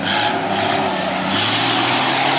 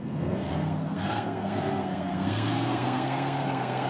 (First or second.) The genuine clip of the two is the first